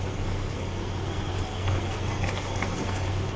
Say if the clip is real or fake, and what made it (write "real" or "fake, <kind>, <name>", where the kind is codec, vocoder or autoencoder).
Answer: fake, codec, SNAC